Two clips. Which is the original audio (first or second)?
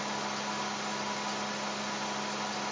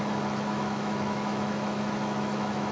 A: first